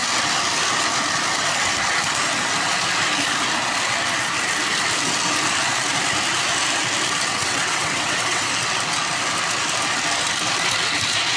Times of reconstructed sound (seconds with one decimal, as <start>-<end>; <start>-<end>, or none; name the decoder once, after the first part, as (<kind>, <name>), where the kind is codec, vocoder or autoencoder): 7.3-8.5 (vocoder, WaveNeXt)